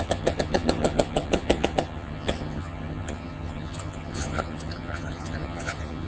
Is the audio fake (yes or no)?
yes